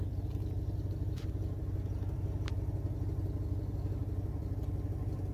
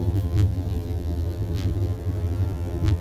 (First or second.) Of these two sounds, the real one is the first